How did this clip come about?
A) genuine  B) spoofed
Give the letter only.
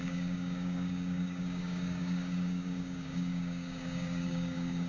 B